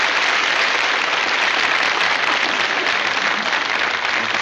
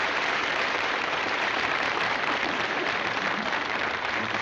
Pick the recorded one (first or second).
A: first